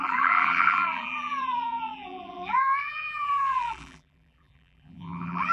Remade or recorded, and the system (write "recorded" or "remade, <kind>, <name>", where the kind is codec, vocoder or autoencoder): remade, vocoder, BigVGAN v2